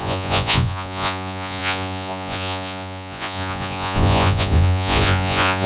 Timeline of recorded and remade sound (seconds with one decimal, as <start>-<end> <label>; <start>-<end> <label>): 0.0-5.7 remade